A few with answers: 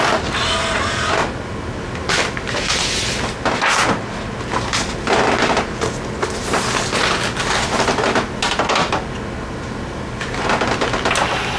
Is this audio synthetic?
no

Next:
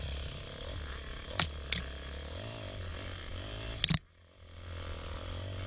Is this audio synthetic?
no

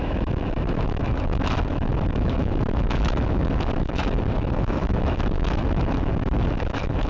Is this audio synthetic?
yes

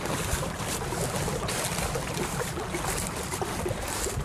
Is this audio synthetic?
no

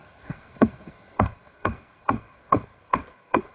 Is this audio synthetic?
yes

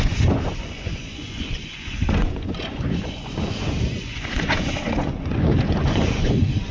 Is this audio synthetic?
yes